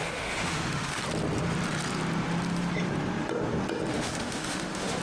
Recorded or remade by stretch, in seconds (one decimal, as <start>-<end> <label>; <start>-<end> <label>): 0.0-1.0 remade; 1.0-3.9 recorded; 3.9-5.0 remade